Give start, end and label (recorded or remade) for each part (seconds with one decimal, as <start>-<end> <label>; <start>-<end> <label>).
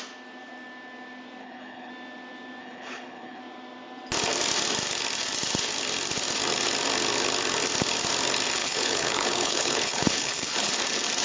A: 0.0-1.4 recorded; 1.4-1.9 remade; 1.9-2.6 recorded; 2.6-3.4 remade; 3.4-8.6 recorded; 8.6-10.7 remade; 10.7-11.2 recorded